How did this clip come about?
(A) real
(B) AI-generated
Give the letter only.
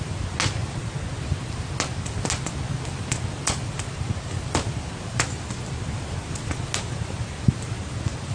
A